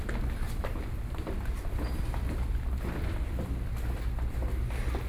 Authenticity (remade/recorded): recorded